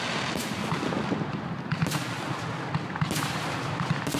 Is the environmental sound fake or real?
real